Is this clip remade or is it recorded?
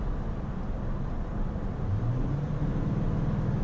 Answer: recorded